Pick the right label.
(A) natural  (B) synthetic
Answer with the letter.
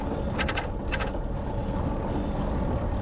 A